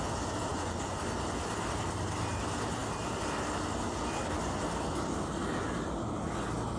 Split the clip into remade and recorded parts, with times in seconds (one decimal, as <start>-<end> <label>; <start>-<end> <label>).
0.0-0.5 recorded; 0.5-1.0 remade; 1.0-6.8 recorded